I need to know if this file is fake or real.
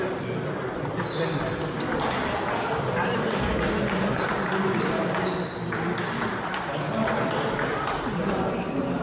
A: real